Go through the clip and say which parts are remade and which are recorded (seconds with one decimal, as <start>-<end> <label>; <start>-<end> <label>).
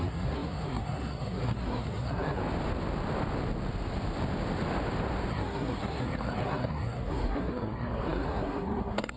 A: 0.0-2.4 remade; 2.4-5.3 recorded; 5.3-9.2 remade